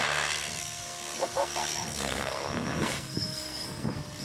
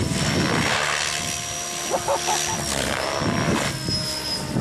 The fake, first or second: first